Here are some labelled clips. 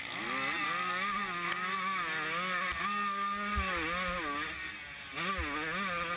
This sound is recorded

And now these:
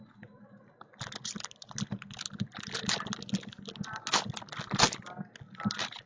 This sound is recorded